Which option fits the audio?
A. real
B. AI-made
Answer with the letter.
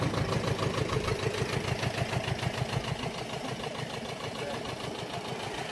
A